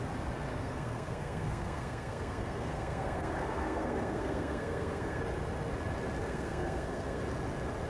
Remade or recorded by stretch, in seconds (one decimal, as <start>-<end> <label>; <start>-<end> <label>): 0.0-0.5 recorded; 0.5-5.2 remade; 5.2-6.2 recorded; 6.2-7.2 remade; 7.2-7.9 recorded